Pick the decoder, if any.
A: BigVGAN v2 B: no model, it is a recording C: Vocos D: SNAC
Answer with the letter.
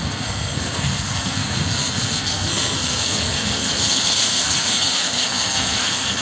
D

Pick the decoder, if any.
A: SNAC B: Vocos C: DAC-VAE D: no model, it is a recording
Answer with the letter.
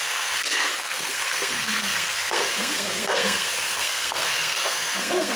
A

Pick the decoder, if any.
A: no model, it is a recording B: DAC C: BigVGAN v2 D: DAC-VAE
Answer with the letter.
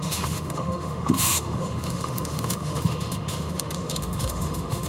D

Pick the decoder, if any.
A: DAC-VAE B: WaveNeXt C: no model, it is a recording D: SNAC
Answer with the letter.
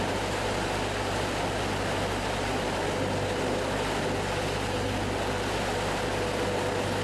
C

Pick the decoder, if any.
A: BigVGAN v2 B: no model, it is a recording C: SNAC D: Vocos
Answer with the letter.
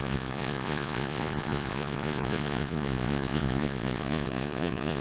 D